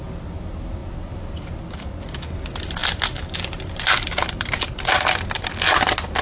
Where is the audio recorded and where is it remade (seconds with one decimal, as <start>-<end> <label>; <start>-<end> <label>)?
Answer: 0.0-6.2 recorded